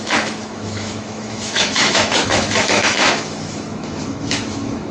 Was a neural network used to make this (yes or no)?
yes